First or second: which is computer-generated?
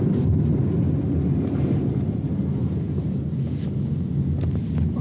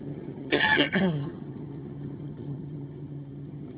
second